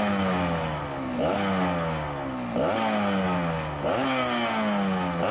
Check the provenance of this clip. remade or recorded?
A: recorded